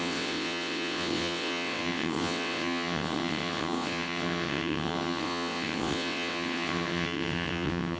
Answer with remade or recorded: remade